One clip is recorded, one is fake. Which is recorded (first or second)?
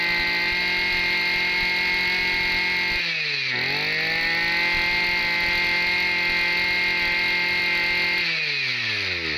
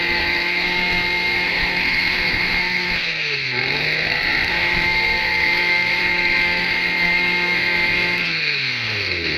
first